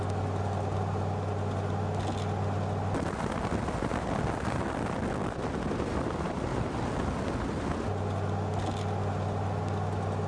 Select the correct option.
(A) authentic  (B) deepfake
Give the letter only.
A